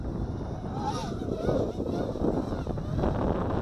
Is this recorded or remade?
recorded